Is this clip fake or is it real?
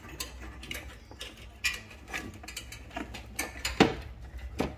real